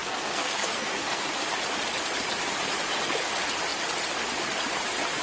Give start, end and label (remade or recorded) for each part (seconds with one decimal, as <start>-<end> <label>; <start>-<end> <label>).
0.0-1.2 remade; 1.2-5.2 recorded